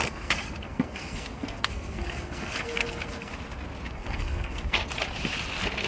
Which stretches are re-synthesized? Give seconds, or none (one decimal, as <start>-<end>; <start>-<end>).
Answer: 0.0-3.3; 3.9-4.8